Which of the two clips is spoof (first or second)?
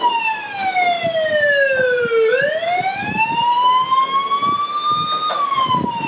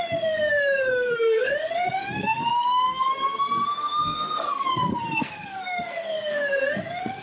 second